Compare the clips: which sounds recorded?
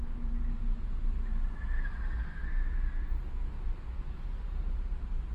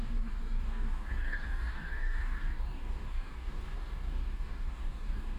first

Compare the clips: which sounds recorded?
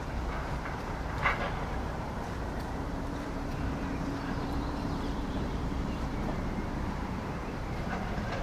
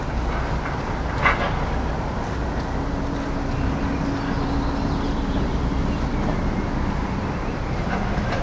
second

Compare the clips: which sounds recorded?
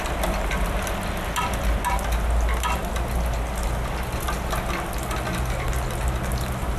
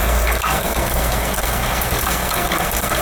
first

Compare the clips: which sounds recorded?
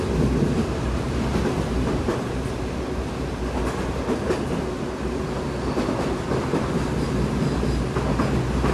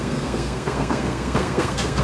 first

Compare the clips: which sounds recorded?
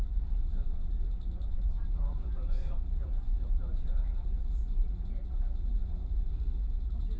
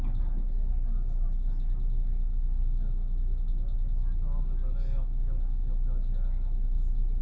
second